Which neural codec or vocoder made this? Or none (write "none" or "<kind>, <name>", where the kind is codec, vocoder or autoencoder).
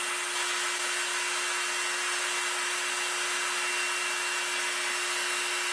none